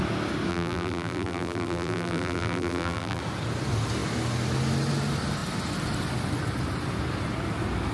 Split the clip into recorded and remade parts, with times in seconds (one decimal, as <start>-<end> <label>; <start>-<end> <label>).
0.0-0.5 recorded; 0.5-3.2 remade; 3.2-7.9 recorded